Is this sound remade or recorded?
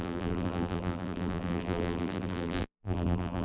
remade